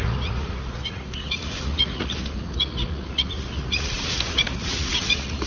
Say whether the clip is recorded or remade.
remade